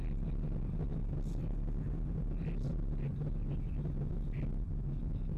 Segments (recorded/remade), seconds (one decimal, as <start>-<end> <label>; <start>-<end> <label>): 0.0-5.4 recorded